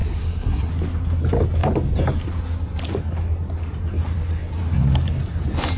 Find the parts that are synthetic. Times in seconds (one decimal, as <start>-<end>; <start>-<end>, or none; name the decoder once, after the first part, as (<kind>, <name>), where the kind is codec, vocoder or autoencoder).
0.0-0.7 (codec, SNAC)